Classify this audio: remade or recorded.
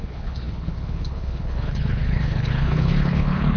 remade